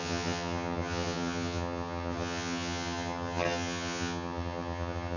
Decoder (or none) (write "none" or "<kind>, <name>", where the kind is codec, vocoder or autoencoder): vocoder, HiFi-GAN